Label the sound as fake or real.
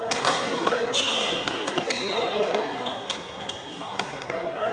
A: fake